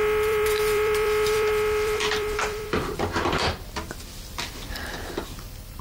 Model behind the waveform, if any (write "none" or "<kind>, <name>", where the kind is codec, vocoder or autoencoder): vocoder, BigVGAN v2